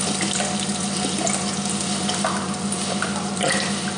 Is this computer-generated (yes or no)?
no